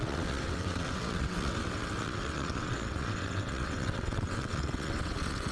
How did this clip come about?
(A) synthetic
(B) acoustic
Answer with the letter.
A